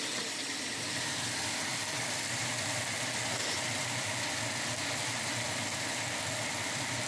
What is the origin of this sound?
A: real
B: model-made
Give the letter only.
A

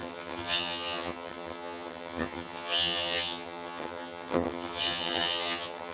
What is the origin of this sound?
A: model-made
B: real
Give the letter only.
A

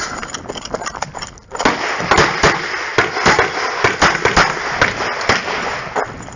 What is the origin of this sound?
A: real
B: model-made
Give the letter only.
A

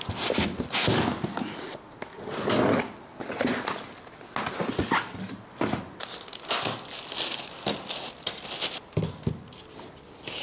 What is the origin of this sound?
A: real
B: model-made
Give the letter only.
A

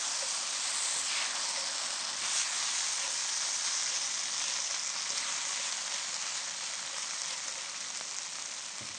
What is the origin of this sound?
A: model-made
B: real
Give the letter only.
B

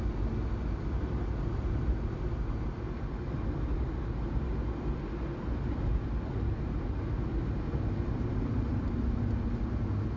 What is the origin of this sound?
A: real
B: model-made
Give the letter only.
A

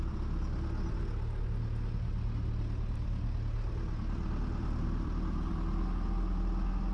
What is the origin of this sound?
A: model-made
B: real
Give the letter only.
B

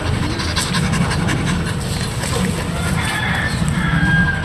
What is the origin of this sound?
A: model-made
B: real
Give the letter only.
B